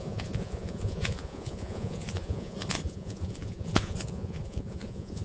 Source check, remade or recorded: remade